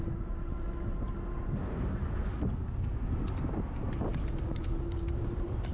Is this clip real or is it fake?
real